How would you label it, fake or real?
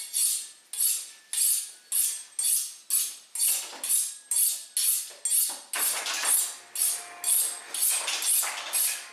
real